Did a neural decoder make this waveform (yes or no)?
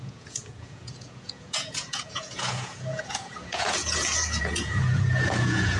yes